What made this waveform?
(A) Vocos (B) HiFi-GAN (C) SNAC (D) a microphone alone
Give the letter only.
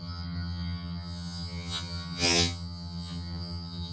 B